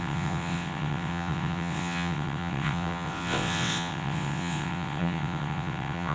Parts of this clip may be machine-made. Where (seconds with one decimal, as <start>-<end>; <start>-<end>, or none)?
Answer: 0.0-6.1